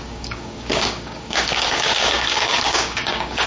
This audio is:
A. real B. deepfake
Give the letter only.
B